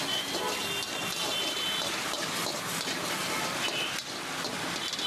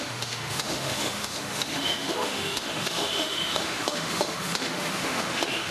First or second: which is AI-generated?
second